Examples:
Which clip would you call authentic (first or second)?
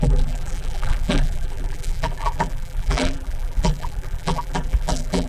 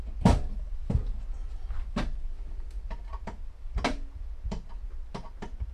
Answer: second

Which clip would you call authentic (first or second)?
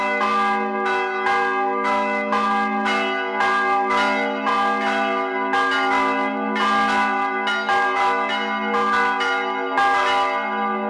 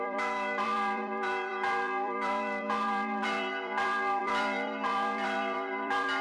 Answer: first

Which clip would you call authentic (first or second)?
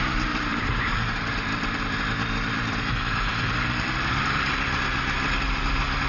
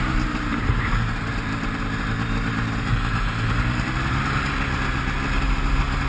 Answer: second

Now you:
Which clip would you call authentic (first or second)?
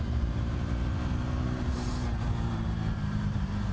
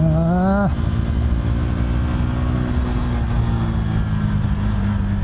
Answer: second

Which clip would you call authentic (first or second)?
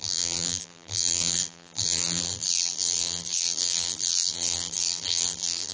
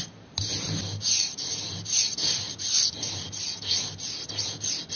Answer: second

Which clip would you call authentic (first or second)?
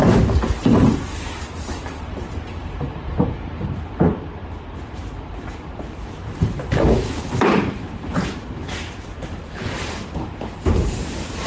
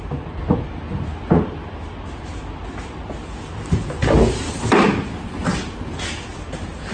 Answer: second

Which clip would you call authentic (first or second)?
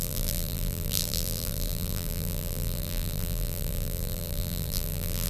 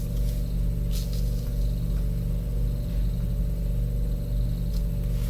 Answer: second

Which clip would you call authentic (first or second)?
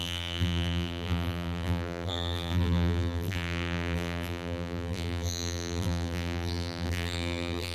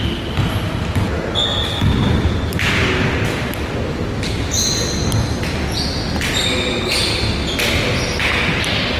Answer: second